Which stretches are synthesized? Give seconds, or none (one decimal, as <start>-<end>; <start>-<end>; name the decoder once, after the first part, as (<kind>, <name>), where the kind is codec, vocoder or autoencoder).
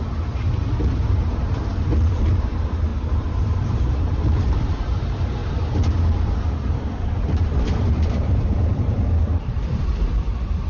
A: 1.1-5.4 (vocoder, BigVGAN v2); 6.5-10.7